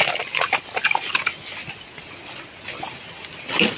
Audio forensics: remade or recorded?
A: recorded